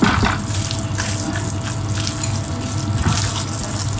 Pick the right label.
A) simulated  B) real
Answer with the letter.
B